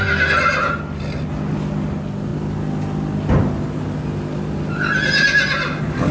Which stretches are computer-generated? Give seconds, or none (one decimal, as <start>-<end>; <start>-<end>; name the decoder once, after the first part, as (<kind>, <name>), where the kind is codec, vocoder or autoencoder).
none